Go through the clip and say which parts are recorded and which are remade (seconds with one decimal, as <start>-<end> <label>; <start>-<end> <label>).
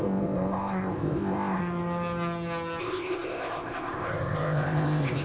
0.0-1.6 remade; 1.6-2.8 recorded; 2.8-5.2 remade